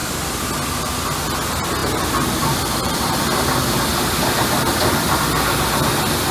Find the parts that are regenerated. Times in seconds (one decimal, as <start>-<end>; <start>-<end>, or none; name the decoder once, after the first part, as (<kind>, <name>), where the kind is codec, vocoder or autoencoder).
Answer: 0.0-0.5 (vocoder, BigVGAN v2); 1.8-3.2; 3.9-5.3